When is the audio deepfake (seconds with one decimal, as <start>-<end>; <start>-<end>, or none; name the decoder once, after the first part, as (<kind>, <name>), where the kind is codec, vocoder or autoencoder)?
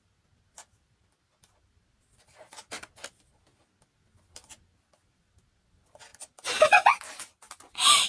none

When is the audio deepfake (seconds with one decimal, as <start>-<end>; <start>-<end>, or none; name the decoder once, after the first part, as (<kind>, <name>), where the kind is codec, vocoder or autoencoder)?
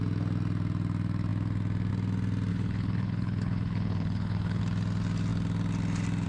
2.5-4.6 (codec, HILCodec)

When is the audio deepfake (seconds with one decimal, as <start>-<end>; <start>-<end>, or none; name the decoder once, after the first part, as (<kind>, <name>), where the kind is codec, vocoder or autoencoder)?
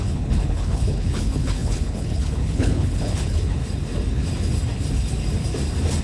0.0-3.6 (codec, HILCodec)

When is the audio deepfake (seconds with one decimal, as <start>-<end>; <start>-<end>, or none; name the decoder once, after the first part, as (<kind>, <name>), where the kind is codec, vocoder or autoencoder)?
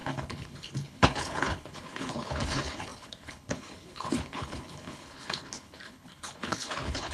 0.0-7.1 (codec, HILCodec)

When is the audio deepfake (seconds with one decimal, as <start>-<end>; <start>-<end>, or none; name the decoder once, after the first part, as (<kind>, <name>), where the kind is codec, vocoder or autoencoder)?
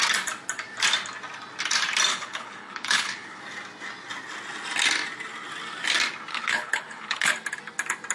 2.1-3.4 (codec, HILCodec); 6.3-7.3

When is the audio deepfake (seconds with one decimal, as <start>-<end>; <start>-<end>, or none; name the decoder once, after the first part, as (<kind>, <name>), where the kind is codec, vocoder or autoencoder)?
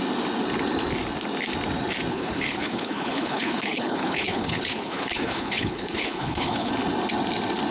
2.1-6.7 (codec, HILCodec)